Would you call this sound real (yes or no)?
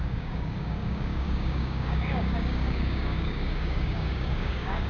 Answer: no